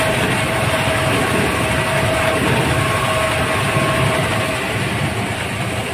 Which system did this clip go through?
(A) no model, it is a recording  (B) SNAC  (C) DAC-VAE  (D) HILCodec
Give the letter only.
A